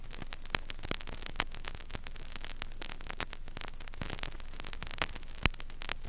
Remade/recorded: recorded